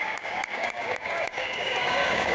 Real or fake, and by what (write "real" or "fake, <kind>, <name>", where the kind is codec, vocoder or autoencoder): fake, codec, DAC